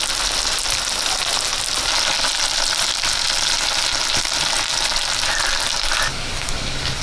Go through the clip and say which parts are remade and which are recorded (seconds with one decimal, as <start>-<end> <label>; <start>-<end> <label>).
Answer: 0.0-6.1 recorded; 6.1-7.0 remade